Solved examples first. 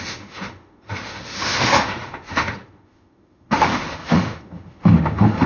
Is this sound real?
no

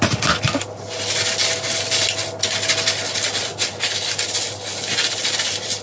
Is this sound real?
yes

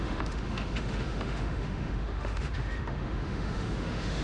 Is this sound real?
no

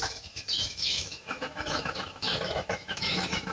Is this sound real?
no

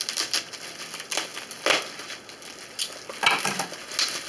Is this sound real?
yes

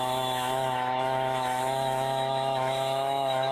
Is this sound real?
no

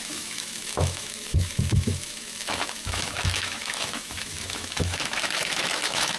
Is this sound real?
no